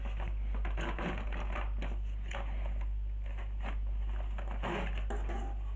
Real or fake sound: real